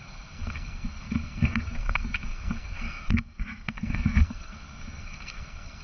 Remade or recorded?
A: remade